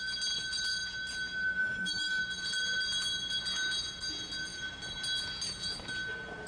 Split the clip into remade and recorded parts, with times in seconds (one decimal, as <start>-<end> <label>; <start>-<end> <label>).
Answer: 0.0-1.6 recorded; 1.6-2.2 remade; 2.2-6.5 recorded